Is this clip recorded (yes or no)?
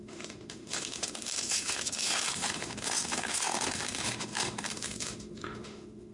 no